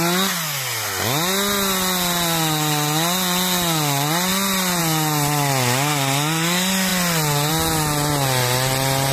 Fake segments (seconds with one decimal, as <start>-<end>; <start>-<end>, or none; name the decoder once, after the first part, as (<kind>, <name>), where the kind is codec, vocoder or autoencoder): none